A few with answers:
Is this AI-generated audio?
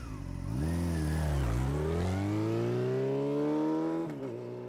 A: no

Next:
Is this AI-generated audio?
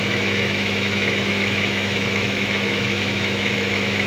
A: yes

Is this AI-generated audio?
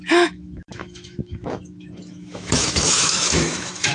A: yes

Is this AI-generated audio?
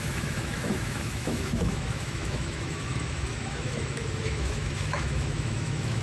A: yes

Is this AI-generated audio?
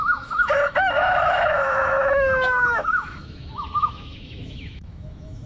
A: yes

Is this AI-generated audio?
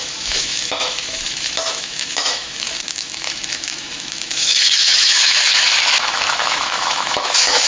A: yes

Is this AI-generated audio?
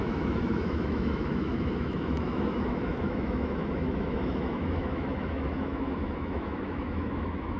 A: yes